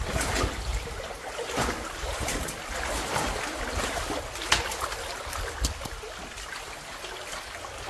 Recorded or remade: recorded